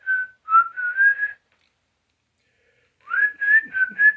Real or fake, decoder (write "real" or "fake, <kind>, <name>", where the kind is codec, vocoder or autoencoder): real